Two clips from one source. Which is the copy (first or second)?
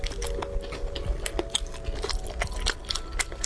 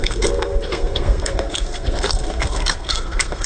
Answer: second